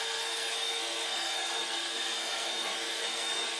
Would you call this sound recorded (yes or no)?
no